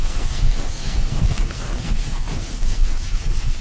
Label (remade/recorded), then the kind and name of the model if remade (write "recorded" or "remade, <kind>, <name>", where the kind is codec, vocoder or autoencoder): remade, codec, SNAC